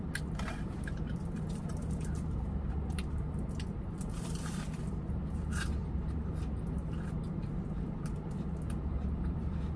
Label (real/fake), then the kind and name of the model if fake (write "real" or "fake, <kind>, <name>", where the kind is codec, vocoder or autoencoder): fake, vocoder, BigVGAN v2